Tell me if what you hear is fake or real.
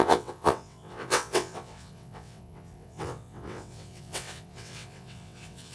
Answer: fake